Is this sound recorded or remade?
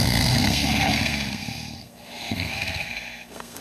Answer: remade